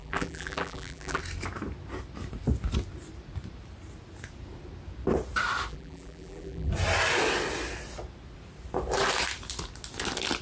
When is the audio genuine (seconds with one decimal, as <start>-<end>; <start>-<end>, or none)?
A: 1.2-5.7; 6.7-10.4